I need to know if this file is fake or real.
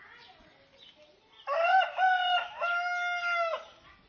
real